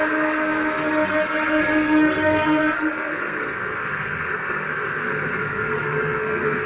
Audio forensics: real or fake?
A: fake